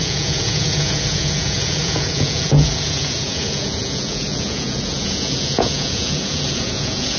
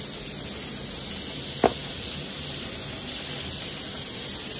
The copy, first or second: first